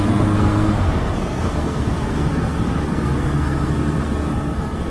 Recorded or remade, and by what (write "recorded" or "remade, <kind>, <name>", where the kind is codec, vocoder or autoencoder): remade, codec, SNAC